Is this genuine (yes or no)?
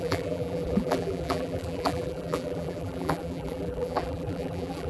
no